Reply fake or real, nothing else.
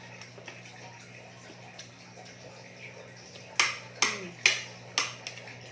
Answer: real